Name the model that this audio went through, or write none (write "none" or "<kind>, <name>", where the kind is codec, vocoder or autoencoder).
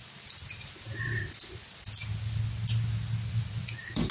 none